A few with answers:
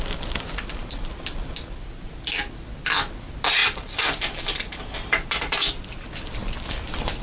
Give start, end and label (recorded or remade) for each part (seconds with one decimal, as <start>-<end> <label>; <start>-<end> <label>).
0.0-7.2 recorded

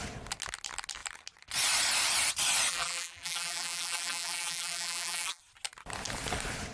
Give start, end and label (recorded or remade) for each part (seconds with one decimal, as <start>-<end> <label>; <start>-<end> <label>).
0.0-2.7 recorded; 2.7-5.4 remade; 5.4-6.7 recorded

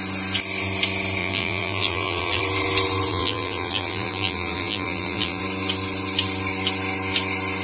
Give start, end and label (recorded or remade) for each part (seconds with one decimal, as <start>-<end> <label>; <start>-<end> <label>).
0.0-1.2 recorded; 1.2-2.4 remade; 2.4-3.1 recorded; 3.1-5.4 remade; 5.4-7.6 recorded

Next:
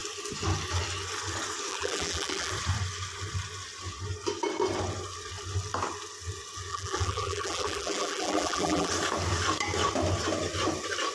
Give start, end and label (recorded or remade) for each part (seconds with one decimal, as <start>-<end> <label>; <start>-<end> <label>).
0.0-1.7 recorded; 1.7-2.5 remade; 2.5-6.7 recorded; 6.7-8.9 remade; 8.9-11.1 recorded